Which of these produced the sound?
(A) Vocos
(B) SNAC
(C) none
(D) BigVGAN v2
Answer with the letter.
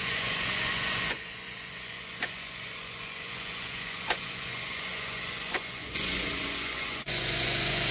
A